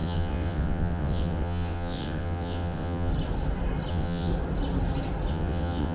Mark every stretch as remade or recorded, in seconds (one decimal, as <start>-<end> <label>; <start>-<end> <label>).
0.0-3.1 remade; 3.1-3.9 recorded; 3.9-4.3 remade; 4.3-5.3 recorded; 5.3-5.9 remade